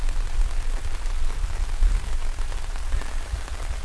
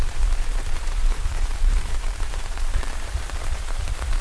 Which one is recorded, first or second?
first